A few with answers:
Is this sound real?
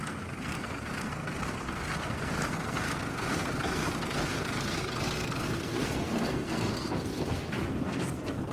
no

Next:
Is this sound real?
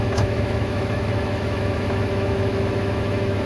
no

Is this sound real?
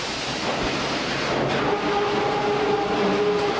yes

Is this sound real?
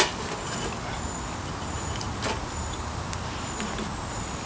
yes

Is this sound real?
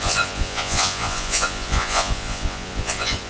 no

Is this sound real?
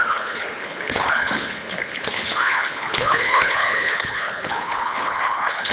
no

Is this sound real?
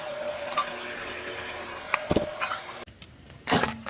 yes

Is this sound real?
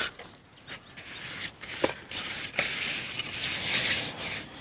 yes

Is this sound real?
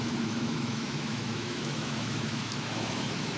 no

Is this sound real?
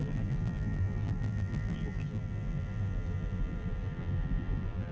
no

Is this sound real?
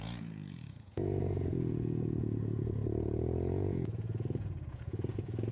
no